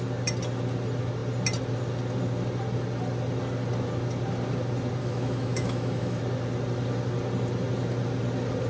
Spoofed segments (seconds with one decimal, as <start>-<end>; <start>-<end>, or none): 5.0-6.2